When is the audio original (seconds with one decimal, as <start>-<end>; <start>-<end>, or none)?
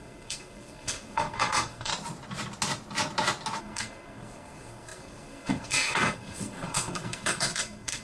1.9-3.6